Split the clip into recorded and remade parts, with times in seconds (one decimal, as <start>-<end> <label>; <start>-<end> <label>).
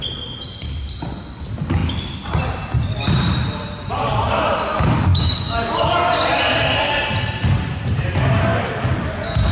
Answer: 0.0-5.1 recorded; 5.1-6.1 remade; 6.1-8.5 recorded; 8.5-9.5 remade